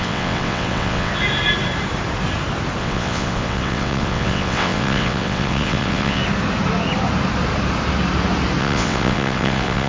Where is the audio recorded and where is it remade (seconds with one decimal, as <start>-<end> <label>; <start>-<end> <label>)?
0.0-1.1 remade; 1.1-2.8 recorded; 2.8-6.2 remade; 6.2-8.6 recorded; 8.6-9.9 remade